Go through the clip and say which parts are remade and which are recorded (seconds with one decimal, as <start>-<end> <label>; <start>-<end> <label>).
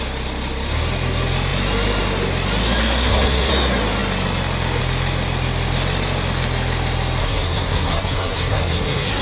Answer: 0.0-2.8 recorded; 2.8-3.5 remade; 3.5-7.2 recorded; 7.2-9.2 remade